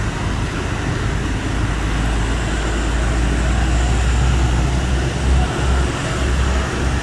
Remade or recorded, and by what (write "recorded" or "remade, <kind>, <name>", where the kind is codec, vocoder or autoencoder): recorded